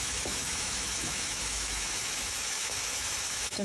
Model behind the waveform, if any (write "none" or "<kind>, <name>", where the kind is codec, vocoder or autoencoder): autoencoder, DAC-VAE